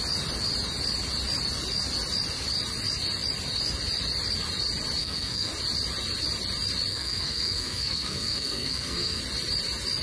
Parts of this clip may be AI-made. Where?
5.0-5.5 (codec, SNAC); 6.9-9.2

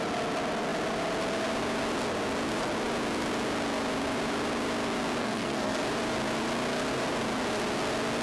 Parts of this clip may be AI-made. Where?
5.2-5.8 (codec, SNAC)